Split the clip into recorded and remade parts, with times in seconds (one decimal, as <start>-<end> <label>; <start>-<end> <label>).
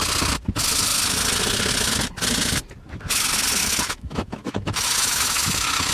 0.0-3.6 recorded; 3.6-5.9 remade